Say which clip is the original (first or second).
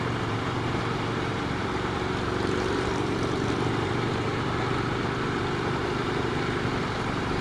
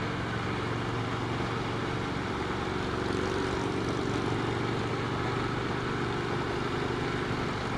second